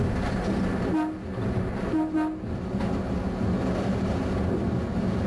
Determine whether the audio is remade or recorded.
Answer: recorded